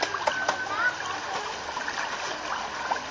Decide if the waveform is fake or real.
real